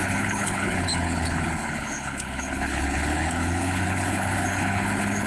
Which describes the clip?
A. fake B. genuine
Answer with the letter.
A